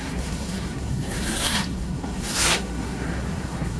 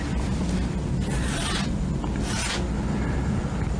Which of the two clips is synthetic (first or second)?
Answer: first